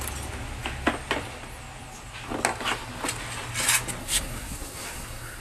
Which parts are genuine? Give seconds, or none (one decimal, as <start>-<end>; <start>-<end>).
0.0-4.0